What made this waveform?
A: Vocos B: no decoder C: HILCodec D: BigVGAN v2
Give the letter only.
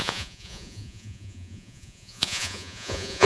A